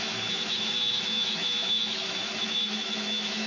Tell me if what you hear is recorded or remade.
remade